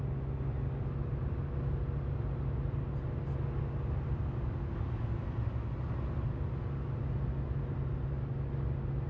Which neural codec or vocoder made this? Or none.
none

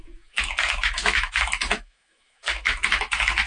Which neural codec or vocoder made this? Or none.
autoencoder, DAC-VAE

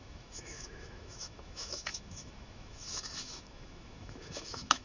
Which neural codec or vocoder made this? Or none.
autoencoder, DAC-VAE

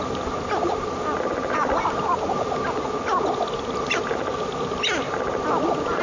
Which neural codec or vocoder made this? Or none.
none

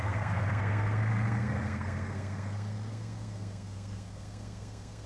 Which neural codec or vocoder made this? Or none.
codec, SNAC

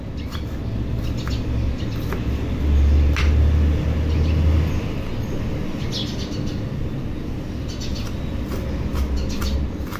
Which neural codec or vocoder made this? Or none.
none